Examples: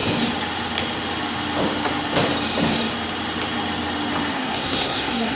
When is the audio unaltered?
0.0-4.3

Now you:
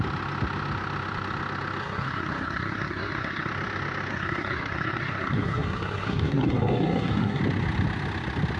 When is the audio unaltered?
0.0-1.8; 3.5-4.1; 7.4-8.6

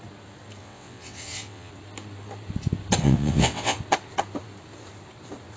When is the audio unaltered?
0.0-0.6; 1.7-3.0; 3.8-5.6

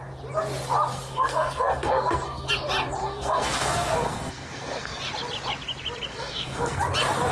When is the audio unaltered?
0.0-0.9; 2.5-3.0; 5.0-6.1; 6.8-7.3

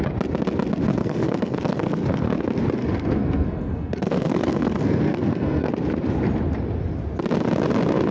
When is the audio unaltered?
0.0-1.0; 2.3-2.8; 5.7-8.1